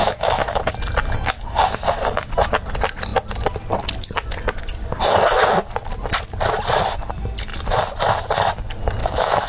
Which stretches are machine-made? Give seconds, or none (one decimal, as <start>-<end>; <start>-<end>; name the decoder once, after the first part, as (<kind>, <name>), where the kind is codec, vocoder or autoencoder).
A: 0.0-0.6 (autoencoder, DAC-VAE); 9.0-9.5